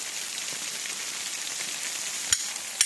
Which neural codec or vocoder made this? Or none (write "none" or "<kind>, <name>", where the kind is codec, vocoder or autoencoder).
none